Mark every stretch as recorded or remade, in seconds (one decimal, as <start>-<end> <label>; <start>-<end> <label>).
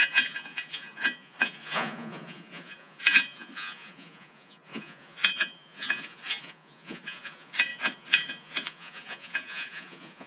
0.0-10.3 remade